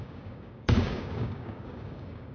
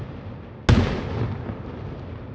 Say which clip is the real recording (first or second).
second